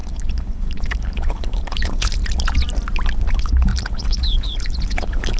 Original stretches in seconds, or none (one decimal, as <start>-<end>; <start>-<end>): 2.2-3.3

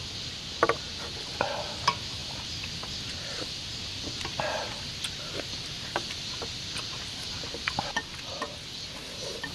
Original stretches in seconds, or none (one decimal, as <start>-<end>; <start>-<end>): 0.0-9.5

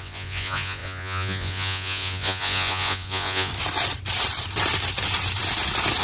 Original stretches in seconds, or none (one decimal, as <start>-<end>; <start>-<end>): 3.5-6.0

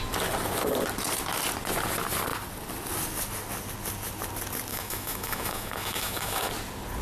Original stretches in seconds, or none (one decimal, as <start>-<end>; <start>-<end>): 0.0-4.7; 6.5-7.0